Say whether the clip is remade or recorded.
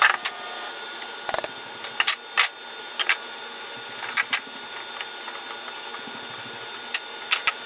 recorded